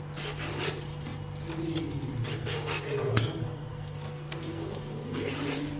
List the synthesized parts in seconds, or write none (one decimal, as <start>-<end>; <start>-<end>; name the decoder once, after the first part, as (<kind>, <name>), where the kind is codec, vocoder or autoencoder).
2.3-5.3 (codec, SNAC)